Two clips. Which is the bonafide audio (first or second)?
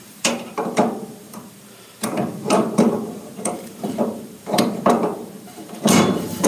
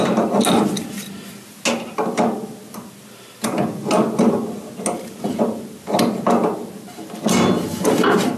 second